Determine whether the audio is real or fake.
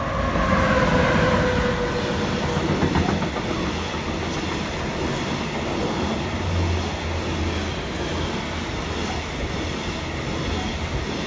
real